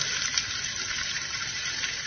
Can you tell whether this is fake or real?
real